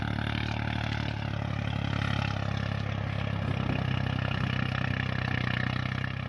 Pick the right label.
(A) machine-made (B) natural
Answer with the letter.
B